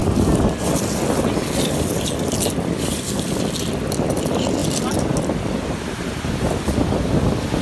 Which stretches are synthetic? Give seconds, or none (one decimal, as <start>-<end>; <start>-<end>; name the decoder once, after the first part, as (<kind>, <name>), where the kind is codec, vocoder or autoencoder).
none